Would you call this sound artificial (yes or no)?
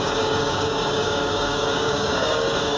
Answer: yes